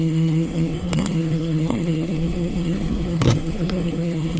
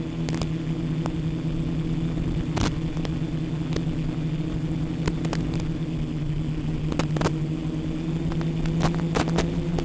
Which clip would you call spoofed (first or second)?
first